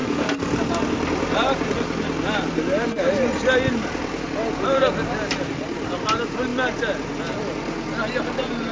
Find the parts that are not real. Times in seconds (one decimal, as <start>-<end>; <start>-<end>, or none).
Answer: 0.0-0.6